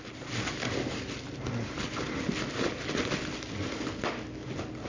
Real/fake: real